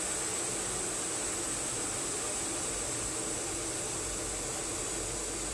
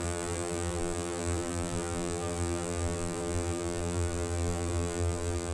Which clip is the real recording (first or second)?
first